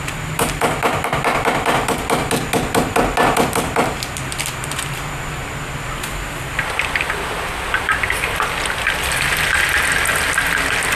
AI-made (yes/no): no